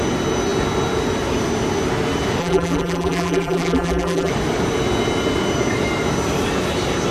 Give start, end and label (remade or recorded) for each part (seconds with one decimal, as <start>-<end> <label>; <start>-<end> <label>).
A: 0.0-2.4 recorded; 2.4-4.3 remade; 4.3-7.1 recorded